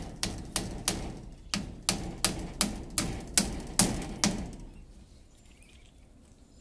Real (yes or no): yes